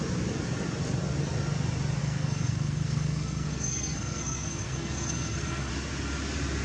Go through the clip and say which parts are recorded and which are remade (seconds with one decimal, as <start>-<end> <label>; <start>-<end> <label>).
0.0-2.0 recorded; 2.0-5.7 remade; 5.7-6.6 recorded